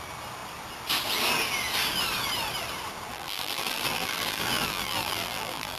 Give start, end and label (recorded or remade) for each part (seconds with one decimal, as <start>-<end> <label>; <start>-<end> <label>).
0.0-3.1 recorded; 3.1-5.8 remade